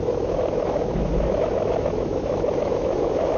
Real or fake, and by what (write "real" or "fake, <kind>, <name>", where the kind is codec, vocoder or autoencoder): fake, autoencoder, DAC-VAE